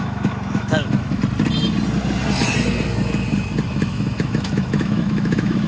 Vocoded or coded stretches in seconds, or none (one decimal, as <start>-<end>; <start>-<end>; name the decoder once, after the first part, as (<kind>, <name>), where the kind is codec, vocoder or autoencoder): 0.0-1.2 (autoencoder, DAC-VAE); 3.7-5.7